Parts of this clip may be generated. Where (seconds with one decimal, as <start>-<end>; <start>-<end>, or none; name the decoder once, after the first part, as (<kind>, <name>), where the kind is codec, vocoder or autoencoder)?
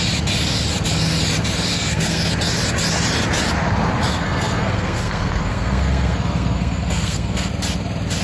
1.7-2.3 (codec, SNAC); 4.1-7.5